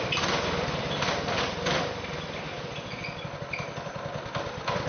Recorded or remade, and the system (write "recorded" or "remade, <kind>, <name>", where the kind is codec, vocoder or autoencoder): recorded